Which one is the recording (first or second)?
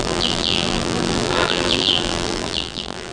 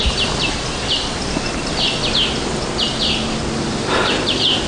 second